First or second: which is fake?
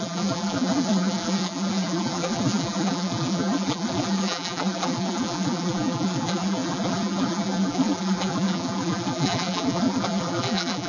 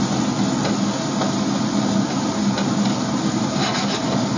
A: first